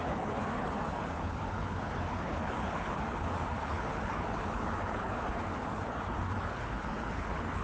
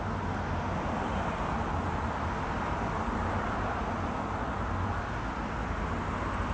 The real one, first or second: second